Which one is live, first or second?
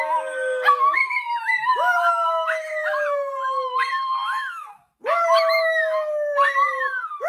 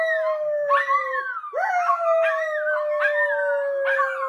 second